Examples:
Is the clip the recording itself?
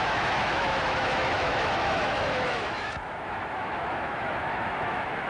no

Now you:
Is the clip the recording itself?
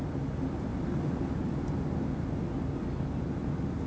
yes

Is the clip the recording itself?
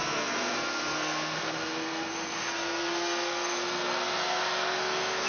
no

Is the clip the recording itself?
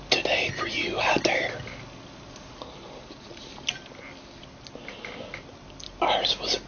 yes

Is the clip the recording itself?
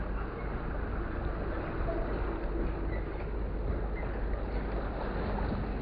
yes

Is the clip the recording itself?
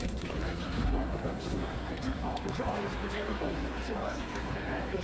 no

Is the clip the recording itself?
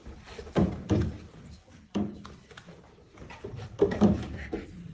no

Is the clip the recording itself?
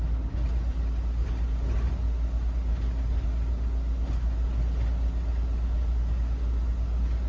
yes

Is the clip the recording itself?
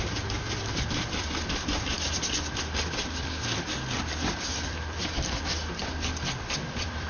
no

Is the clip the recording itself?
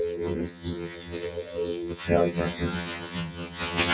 no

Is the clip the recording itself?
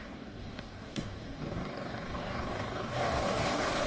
no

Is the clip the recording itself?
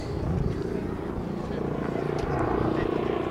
yes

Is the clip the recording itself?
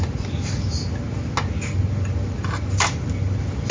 yes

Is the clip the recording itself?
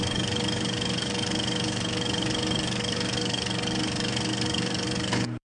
no